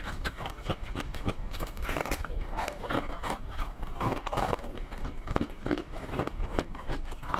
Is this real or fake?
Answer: fake